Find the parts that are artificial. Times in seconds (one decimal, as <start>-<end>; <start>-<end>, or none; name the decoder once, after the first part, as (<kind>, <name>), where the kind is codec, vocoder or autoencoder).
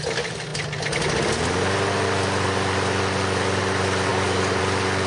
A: 4.1-4.6 (codec, DAC)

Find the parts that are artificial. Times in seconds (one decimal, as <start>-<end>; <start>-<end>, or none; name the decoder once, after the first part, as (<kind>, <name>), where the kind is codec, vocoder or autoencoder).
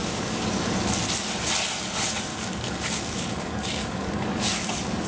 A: 0.0-0.9 (codec, DAC); 2.3-4.6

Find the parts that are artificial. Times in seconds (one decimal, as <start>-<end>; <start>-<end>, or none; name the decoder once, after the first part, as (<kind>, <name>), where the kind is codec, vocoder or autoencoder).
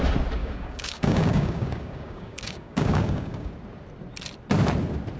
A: 0.4-3.5 (codec, DAC)